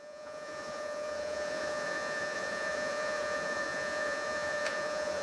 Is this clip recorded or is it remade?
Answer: remade